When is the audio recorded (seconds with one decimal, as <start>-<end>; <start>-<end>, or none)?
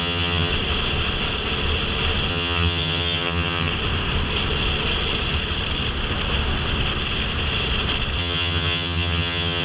0.5-2.3; 3.7-8.2